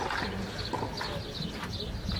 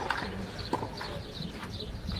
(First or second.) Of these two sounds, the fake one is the second